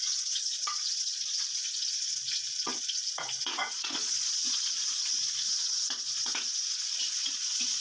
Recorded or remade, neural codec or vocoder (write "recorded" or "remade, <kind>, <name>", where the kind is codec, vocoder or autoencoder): remade, vocoder, Vocos